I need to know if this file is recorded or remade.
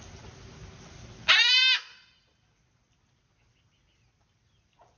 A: recorded